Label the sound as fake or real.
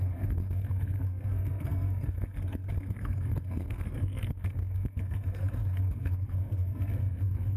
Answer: fake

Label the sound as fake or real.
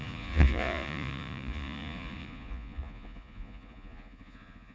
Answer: fake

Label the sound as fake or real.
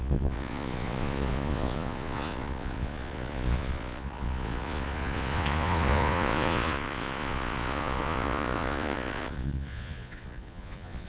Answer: fake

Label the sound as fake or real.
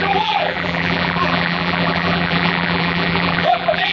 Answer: fake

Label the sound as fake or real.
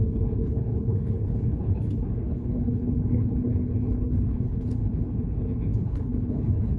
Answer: fake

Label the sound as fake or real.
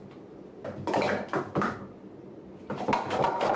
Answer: real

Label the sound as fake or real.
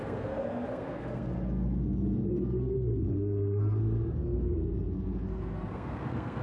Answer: fake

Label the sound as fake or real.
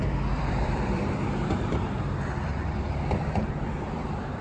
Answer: fake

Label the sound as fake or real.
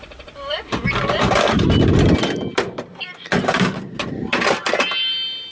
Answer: real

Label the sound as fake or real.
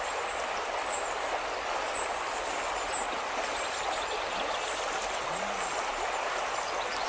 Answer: real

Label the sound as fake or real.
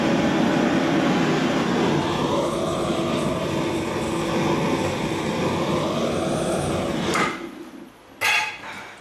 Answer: real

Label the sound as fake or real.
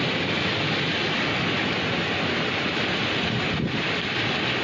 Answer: real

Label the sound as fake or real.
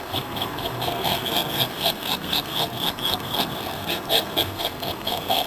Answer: fake